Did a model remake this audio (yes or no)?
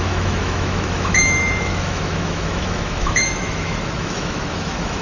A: yes